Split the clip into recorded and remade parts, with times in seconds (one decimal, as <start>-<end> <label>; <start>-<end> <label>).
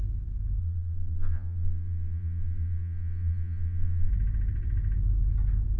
0.0-0.6 recorded; 0.6-4.1 remade; 4.1-5.8 recorded